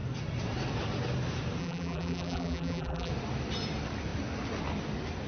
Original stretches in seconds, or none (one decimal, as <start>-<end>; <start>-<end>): 0.0-1.6; 3.1-5.3